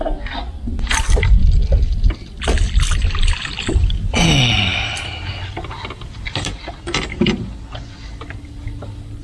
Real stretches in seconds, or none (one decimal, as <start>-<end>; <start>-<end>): 0.0-9.2